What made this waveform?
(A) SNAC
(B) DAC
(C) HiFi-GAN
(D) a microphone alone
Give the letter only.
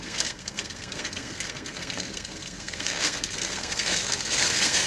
A